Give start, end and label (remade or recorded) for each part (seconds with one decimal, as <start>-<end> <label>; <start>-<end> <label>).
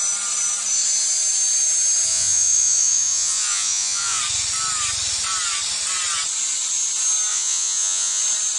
0.0-2.1 recorded; 2.1-4.2 remade; 4.2-7.3 recorded; 7.3-8.2 remade; 8.2-8.6 recorded